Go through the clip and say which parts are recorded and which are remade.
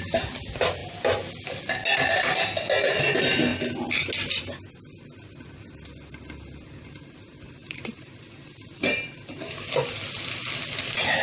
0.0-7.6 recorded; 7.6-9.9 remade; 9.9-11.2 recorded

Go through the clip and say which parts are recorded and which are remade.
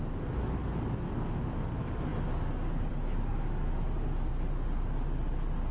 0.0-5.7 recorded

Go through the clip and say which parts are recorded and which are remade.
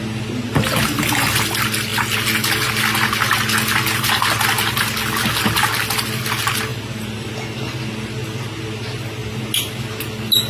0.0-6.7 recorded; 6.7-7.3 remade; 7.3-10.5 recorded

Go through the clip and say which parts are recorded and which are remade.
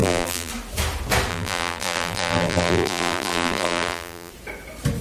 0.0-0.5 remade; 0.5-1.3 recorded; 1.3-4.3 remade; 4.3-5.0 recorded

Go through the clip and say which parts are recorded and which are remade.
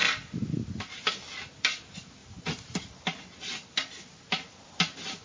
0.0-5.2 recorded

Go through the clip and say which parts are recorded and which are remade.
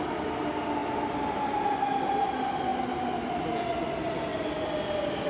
0.0-5.3 recorded